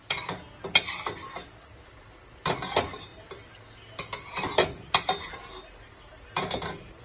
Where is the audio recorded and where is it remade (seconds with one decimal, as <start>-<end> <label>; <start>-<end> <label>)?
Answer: 0.0-7.0 recorded